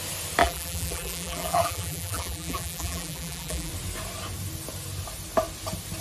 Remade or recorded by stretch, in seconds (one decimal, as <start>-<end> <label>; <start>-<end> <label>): 0.0-0.4 recorded; 0.4-3.7 remade; 3.7-6.0 recorded